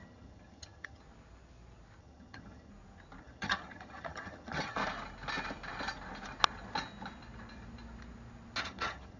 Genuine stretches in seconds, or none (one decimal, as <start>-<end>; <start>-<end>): 1.0-2.0; 2.7-3.2; 4.8-8.6